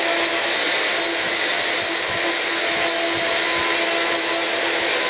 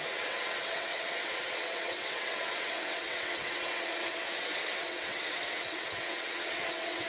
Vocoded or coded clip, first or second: second